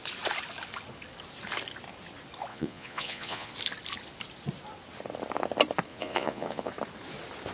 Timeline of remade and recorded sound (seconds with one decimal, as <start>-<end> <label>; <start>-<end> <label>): 0.0-2.5 recorded; 2.5-3.5 remade; 3.5-5.9 recorded; 5.9-6.7 remade; 6.7-7.5 recorded